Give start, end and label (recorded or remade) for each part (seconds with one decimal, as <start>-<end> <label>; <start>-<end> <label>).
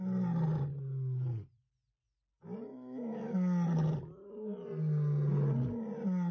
0.0-2.7 recorded; 2.7-3.3 remade; 3.3-6.3 recorded